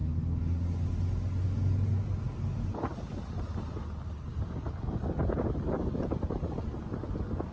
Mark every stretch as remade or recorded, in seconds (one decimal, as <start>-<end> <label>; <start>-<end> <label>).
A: 0.0-7.5 recorded